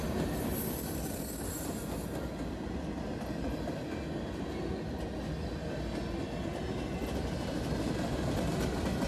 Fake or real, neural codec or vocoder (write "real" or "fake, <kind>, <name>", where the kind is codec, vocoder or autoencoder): real